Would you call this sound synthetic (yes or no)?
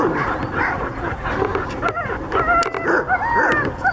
no